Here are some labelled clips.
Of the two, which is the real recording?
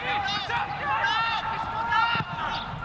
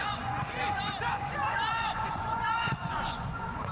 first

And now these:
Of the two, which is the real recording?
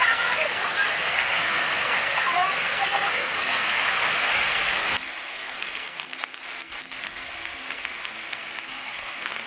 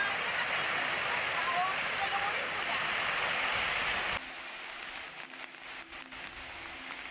second